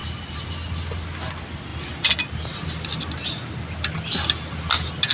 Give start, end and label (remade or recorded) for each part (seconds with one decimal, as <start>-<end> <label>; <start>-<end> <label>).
0.0-5.1 recorded